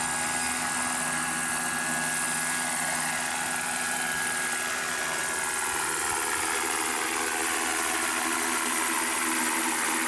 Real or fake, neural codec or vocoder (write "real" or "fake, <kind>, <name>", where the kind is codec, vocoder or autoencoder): real